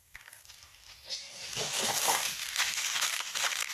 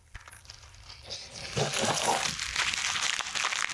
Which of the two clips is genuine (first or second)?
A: second